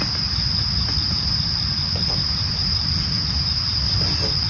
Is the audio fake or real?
real